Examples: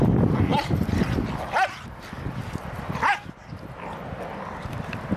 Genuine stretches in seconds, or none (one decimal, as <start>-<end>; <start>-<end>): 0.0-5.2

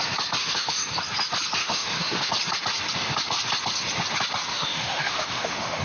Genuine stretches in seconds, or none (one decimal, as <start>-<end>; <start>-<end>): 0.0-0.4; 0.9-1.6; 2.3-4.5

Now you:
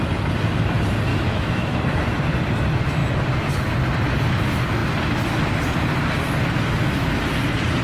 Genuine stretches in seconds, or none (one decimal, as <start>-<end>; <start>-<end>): 0.0-1.1; 1.8-7.8

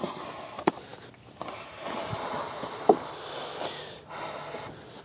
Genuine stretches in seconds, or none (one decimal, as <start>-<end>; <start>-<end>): 0.0-5.0

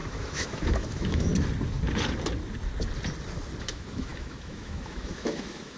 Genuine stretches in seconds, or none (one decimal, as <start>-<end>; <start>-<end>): 1.3-3.6